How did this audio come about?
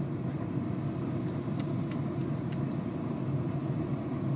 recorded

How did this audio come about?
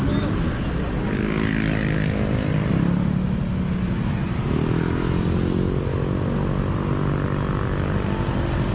recorded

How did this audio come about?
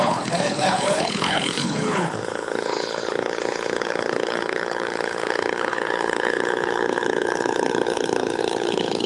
remade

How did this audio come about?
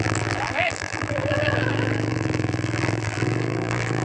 remade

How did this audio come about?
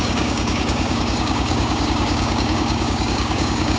remade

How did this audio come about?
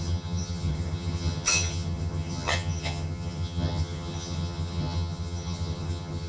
remade